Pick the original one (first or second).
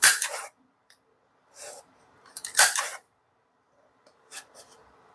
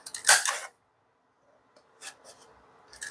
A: second